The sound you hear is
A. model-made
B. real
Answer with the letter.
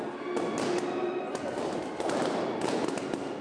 B